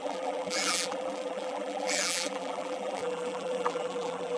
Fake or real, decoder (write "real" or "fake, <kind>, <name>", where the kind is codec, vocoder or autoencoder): fake, vocoder, BigVGAN v2